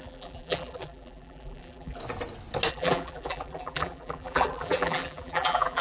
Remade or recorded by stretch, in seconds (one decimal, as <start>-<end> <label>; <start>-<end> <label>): 0.0-2.0 remade; 2.0-2.7 recorded; 2.7-5.8 remade

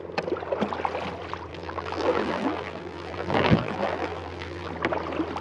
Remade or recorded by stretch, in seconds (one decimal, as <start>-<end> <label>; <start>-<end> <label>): 0.0-1.5 recorded; 1.5-4.7 remade; 4.7-5.4 recorded